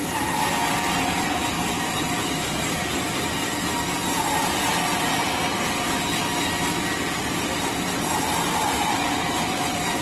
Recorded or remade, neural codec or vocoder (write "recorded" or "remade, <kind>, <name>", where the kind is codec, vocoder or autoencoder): recorded